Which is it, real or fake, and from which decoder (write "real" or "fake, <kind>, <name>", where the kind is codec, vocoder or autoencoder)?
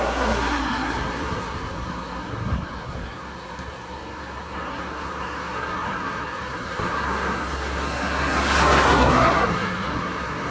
fake, codec, SNAC